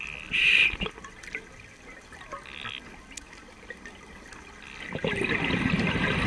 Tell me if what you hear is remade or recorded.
recorded